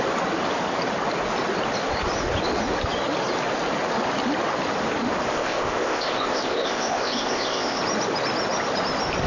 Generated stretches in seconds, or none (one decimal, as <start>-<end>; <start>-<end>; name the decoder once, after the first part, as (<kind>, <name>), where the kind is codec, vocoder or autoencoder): 5.3-7.8 (codec, ZipCodec)